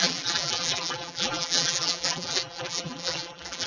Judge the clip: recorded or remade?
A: remade